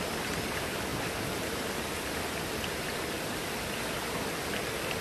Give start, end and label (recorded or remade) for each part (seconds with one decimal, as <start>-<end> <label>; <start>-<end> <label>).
0.0-5.0 recorded